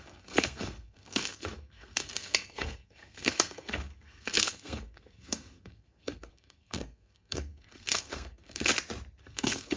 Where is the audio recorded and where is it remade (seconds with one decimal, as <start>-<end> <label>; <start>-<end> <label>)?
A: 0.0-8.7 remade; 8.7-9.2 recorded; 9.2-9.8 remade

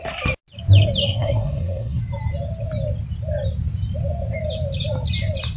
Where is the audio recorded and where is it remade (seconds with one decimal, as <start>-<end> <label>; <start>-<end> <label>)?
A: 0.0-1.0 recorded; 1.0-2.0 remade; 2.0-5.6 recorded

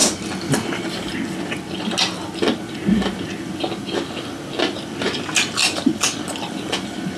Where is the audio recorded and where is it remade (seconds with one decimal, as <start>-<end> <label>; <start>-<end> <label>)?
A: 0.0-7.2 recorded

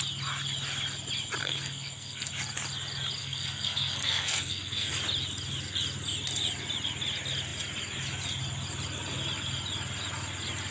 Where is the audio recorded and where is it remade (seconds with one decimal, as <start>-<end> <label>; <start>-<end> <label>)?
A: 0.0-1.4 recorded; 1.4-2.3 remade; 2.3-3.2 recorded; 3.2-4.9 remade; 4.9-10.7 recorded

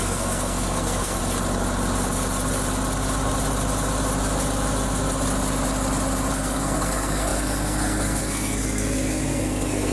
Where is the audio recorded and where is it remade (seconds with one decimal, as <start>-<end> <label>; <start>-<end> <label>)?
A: 0.0-1.2 remade; 1.2-6.3 recorded; 6.3-9.9 remade